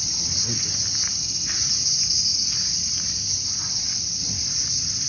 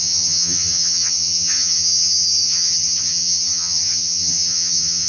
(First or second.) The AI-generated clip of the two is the second